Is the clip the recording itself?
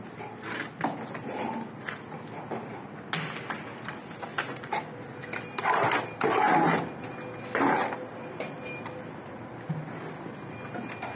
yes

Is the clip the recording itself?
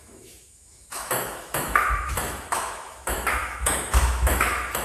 no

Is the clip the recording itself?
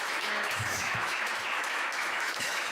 no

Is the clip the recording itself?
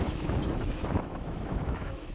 no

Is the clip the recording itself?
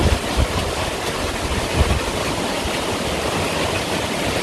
yes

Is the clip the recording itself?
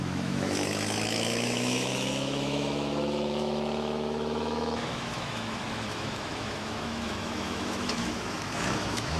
no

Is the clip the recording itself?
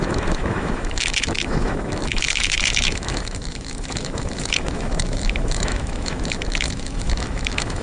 no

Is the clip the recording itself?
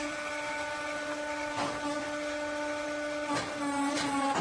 yes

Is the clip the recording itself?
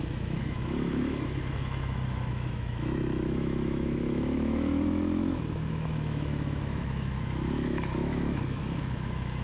no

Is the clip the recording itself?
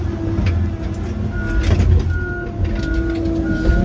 yes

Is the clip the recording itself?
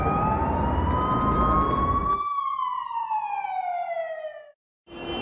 yes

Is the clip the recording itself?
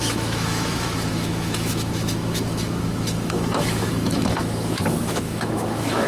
no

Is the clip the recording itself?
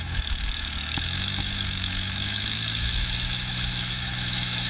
no